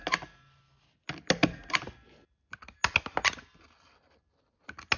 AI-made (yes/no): no